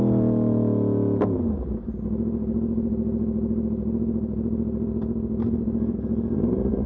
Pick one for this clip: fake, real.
real